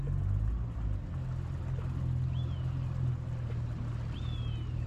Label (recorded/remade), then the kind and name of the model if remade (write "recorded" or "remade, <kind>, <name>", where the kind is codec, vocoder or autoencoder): recorded